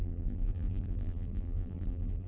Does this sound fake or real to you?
fake